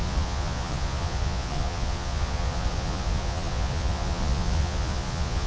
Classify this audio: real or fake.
fake